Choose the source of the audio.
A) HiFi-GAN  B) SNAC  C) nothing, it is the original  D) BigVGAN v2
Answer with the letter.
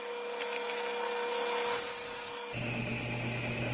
C